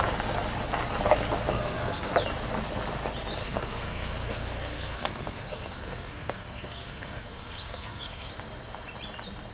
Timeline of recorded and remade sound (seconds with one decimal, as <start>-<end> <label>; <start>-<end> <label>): 0.0-1.5 recorded; 1.5-2.1 remade; 2.1-3.4 recorded; 3.4-8.3 remade; 8.3-9.5 recorded